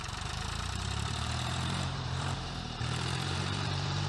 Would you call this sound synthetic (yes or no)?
yes